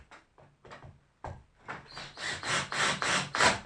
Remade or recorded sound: recorded